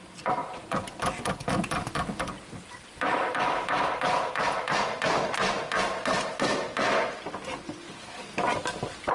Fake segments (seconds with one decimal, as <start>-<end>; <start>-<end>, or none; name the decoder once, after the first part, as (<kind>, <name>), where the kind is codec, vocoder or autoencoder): none